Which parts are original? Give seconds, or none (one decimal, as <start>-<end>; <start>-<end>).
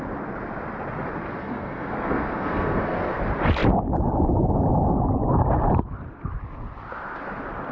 0.0-1.4; 3.2-7.7